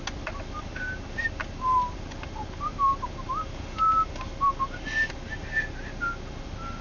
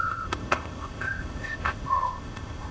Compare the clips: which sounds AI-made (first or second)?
second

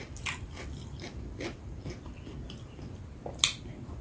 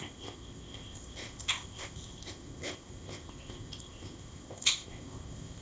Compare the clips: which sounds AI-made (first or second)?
second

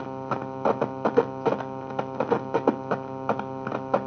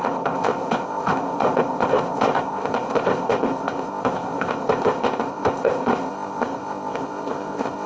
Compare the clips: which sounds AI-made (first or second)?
second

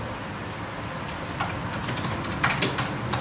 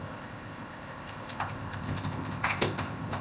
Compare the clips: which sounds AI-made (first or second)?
second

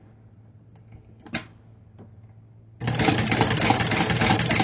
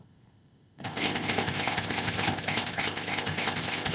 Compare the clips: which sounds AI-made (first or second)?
second